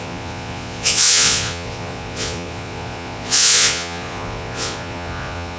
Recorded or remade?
remade